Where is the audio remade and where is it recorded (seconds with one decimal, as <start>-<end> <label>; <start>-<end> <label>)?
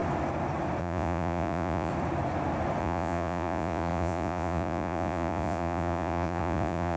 0.0-0.8 recorded; 0.8-1.9 remade; 1.9-2.8 recorded; 2.8-7.0 remade